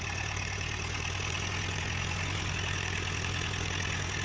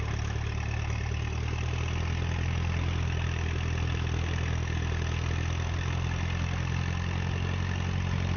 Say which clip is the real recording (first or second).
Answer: second